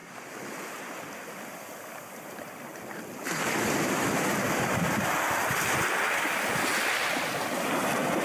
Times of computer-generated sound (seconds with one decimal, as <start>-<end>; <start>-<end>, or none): 1.6-8.2